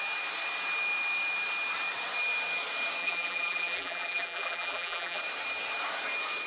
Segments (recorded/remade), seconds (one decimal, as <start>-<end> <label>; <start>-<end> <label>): 0.0-3.0 recorded; 3.0-5.2 remade; 5.2-6.5 recorded